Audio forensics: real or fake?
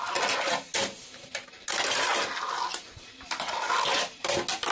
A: real